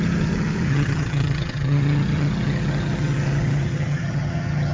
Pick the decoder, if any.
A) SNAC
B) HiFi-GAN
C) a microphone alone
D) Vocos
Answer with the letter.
B